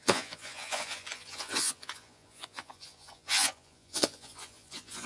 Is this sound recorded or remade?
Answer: remade